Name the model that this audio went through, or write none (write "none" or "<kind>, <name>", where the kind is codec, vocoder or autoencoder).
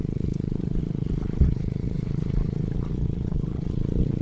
vocoder, Vocos